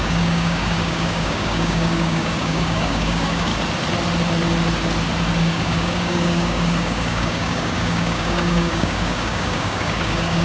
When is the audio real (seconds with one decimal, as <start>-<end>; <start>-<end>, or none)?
3.5-5.4